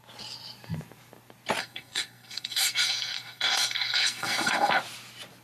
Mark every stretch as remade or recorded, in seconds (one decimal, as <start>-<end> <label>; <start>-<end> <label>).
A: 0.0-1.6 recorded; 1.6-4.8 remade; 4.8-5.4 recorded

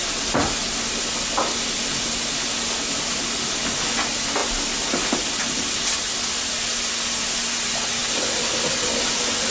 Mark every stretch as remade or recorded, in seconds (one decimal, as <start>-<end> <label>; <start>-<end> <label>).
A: 0.0-9.5 recorded

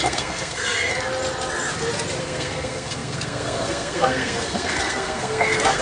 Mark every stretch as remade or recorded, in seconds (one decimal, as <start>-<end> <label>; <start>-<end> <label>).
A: 0.0-0.9 remade; 0.9-2.2 recorded; 2.2-5.8 remade

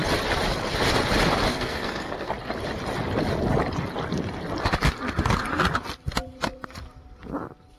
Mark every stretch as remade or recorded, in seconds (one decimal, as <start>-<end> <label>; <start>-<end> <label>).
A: 0.0-1.5 recorded; 1.5-2.3 remade; 2.3-7.8 recorded

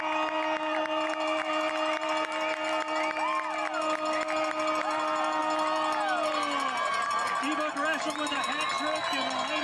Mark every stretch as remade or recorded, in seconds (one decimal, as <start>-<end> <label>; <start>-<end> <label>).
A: 0.0-9.6 recorded

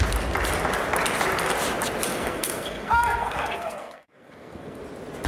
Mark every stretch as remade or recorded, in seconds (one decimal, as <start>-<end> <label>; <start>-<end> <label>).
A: 0.0-2.1 recorded; 2.1-4.8 remade; 4.8-5.3 recorded